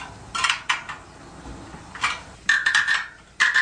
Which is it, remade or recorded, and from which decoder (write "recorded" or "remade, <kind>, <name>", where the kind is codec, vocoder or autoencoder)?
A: recorded